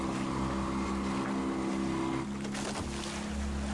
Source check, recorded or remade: recorded